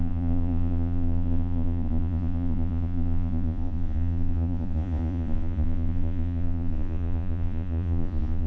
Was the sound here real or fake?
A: fake